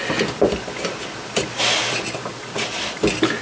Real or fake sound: real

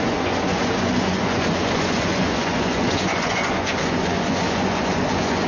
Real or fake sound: fake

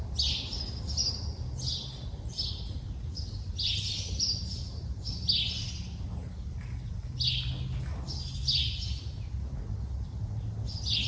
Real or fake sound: real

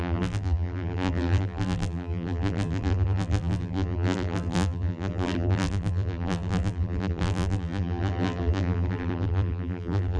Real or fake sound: fake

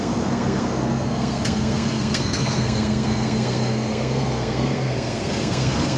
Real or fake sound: fake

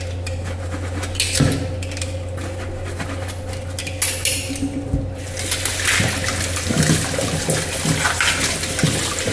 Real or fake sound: real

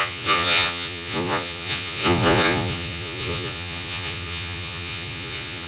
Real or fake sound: fake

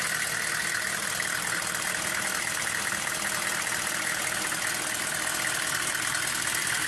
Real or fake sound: real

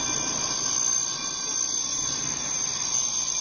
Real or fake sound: real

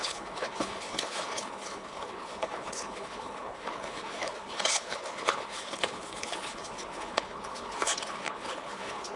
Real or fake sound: fake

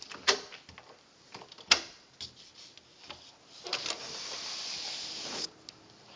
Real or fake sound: real